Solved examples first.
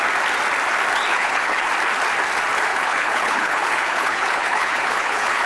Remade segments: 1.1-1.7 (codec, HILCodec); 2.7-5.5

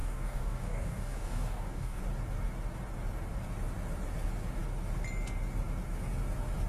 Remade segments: 0.0-2.0 (codec, DAC)

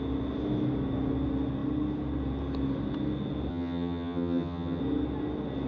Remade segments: 3.5-4.8 (vocoder, HiFi-GAN)

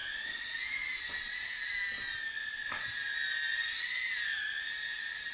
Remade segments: none

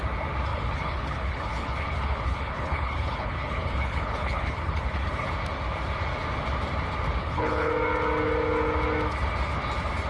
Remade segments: 0.5-5.3 (codec, HILCodec); 7.2-7.7